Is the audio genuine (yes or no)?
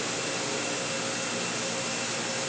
yes